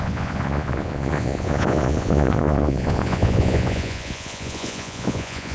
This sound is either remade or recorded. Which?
remade